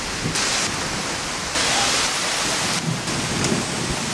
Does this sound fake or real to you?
real